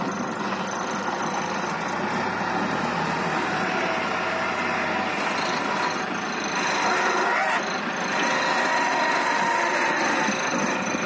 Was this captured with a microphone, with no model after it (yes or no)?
yes